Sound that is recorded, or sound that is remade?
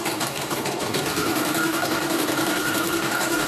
remade